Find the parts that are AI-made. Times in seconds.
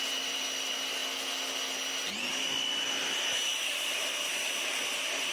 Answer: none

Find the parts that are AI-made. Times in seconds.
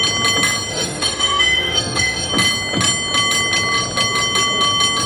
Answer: 0.7-2.3 (autoencoder, DAC-VAE)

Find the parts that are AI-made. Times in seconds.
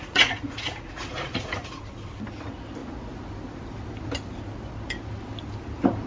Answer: 0.0-1.8 (vocoder, Vocos)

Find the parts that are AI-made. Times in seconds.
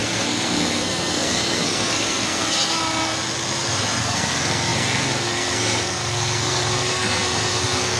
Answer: 0.0-2.8 (codec, SNAC); 4.0-8.0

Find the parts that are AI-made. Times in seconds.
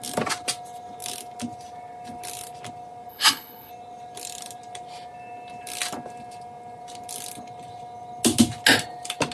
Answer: 3.1-3.7 (codec, HILCodec)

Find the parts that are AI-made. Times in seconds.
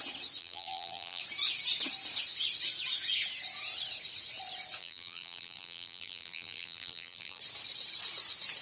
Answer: 0.4-1.2 (vocoder, BigVGAN v2); 4.8-7.4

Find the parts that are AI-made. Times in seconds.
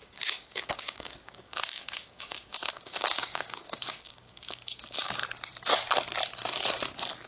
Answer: 0.0-5.2 (codec, DAC)